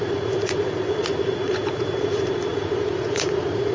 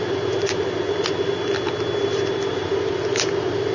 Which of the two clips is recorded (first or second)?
second